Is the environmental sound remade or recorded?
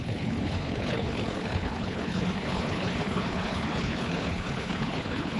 remade